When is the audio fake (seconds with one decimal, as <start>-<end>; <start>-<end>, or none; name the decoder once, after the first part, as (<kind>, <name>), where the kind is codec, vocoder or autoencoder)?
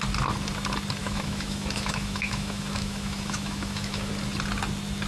1.0-4.1 (autoencoder, DAC-VAE)